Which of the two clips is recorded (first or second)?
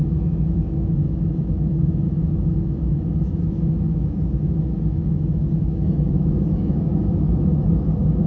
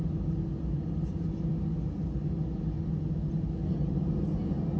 second